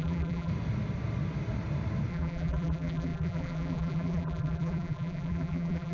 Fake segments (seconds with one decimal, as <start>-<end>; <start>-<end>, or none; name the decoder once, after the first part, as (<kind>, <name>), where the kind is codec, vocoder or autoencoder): 0.0-0.5 (vocoder, BigVGAN v2); 2.1-5.9